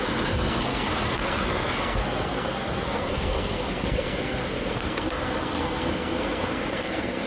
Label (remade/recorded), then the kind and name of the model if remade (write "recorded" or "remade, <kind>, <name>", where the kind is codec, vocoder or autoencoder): remade, codec, SNAC